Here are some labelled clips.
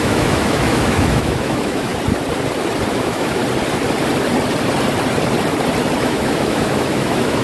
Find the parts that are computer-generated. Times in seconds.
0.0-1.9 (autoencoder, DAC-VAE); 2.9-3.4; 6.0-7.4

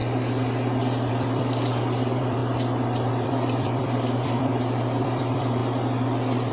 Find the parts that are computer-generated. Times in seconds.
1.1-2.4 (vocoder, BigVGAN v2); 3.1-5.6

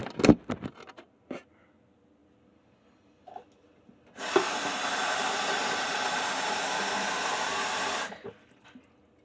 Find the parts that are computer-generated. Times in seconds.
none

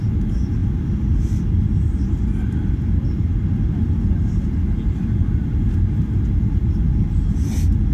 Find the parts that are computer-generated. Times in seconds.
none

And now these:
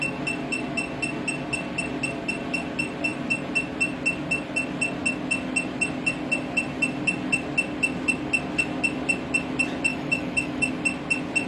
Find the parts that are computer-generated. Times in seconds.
9.9-10.7 (autoencoder, DAC-VAE)